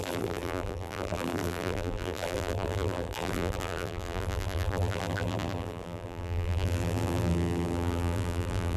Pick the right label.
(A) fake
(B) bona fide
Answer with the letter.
A